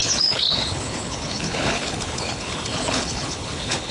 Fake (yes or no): yes